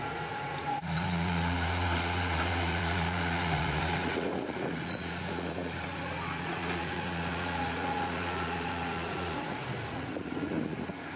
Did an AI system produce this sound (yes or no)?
yes